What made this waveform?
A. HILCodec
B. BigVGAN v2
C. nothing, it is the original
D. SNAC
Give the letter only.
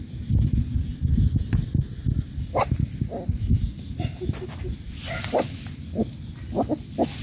C